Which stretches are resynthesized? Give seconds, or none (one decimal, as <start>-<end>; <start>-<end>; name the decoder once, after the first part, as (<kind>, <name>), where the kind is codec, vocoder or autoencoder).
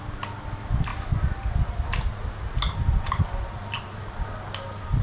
none